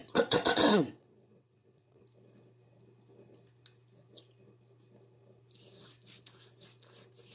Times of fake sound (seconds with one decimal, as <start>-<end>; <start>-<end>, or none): 0.0-2.0

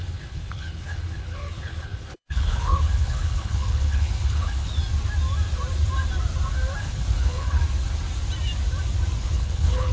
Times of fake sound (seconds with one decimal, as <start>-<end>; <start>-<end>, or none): 0.0-4.7; 6.8-7.6; 9.2-9.9

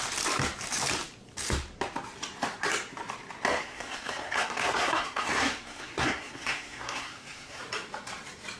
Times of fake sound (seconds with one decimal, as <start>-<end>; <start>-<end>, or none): 3.6-7.6

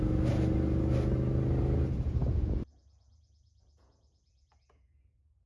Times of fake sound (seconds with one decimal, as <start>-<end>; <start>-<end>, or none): 2.3-5.5